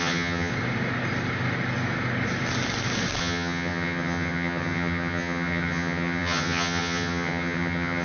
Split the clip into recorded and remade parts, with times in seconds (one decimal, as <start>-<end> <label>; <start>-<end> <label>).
0.0-0.5 remade; 0.5-3.2 recorded; 3.2-8.0 remade

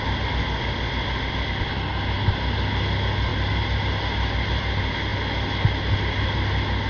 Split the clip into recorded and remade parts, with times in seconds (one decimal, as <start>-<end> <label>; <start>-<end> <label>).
0.0-6.9 recorded

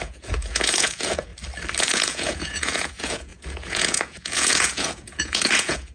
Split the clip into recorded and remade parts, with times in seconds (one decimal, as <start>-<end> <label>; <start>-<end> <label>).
0.0-1.3 remade; 1.3-1.8 recorded; 1.8-5.9 remade

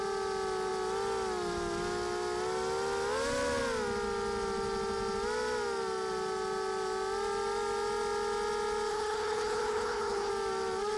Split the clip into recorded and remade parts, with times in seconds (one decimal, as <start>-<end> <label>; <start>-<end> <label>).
0.0-8.9 recorded; 8.9-10.3 remade; 10.3-11.0 recorded

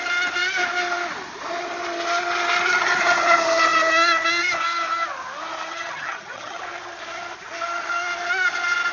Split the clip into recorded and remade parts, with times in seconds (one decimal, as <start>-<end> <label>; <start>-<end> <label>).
0.0-5.7 recorded; 5.7-6.6 remade; 6.6-8.9 recorded

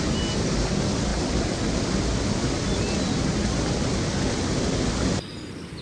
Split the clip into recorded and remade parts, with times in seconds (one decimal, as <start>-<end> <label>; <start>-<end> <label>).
0.0-5.8 recorded